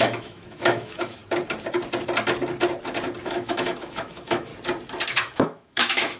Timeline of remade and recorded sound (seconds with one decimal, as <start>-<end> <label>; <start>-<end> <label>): 0.0-1.2 remade; 1.2-3.2 recorded; 3.2-4.5 remade; 4.5-5.1 recorded; 5.1-6.2 remade

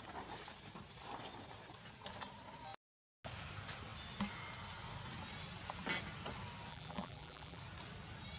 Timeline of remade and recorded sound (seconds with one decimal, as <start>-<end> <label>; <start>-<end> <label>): 0.0-6.7 recorded; 6.7-7.6 remade; 7.6-8.4 recorded

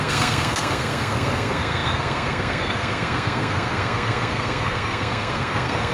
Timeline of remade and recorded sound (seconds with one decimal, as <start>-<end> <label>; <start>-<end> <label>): 0.0-5.9 remade

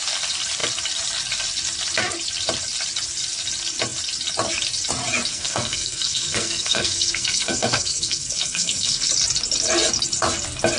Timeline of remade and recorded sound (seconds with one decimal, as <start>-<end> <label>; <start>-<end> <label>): 0.0-5.3 recorded; 5.3-9.1 remade; 9.1-10.8 recorded

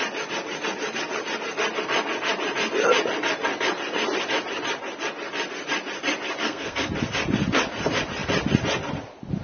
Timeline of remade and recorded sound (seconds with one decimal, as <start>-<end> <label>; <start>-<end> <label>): 0.0-6.4 recorded; 6.4-6.9 remade; 6.9-9.4 recorded

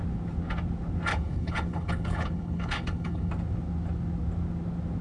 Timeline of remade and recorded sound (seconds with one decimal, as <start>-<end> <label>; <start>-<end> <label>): 0.0-1.1 recorded; 1.1-3.3 remade; 3.3-5.0 recorded

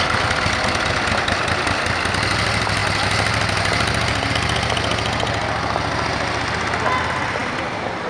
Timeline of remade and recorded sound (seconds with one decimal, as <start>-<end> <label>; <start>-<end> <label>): 0.0-8.1 recorded